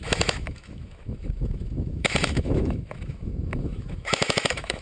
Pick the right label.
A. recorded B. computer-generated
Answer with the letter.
B